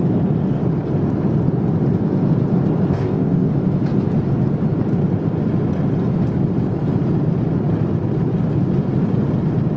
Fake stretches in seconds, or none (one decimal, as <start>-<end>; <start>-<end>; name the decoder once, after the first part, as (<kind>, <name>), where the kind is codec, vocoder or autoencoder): 2.9-3.5 (codec, ZipCodec)